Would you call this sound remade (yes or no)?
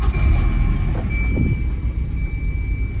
no